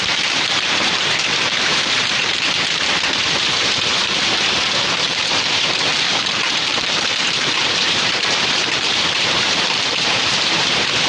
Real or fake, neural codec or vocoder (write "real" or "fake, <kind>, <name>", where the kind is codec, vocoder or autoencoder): fake, vocoder, BigVGAN v2